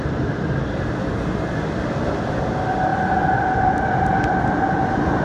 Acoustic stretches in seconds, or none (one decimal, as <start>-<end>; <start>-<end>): 0.0-5.2